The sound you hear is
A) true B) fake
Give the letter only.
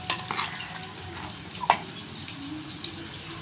A